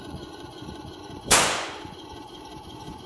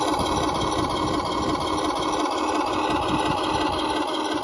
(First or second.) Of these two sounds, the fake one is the first